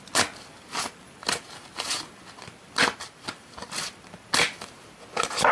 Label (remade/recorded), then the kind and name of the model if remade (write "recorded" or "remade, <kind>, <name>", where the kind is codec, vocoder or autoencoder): recorded